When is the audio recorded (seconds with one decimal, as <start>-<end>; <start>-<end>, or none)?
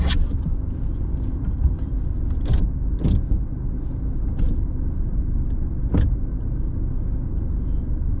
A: 0.0-8.2